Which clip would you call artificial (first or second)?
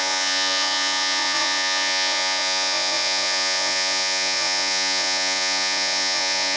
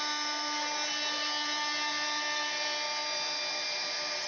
first